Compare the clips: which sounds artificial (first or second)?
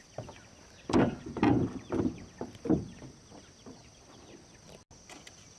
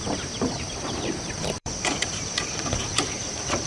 second